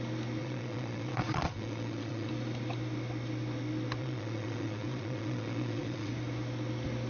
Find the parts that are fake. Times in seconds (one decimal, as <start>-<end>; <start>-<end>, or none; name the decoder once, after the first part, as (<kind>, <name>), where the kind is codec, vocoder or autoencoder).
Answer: 0.4-2.3 (vocoder, Vocos); 4.0-6.1